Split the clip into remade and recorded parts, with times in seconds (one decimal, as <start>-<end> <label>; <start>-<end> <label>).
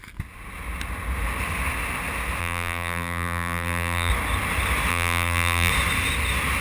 0.0-2.4 recorded; 2.4-4.1 remade; 4.1-4.9 recorded; 4.9-5.7 remade; 5.7-6.6 recorded